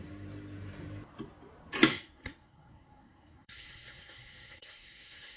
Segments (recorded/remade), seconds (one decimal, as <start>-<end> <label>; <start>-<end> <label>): 0.0-1.9 recorded; 1.9-5.4 remade